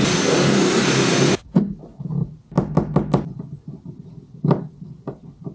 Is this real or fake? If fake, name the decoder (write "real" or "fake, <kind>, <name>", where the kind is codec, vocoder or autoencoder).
real